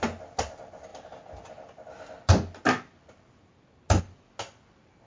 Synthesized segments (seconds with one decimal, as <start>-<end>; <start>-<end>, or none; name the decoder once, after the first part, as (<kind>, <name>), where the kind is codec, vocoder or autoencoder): none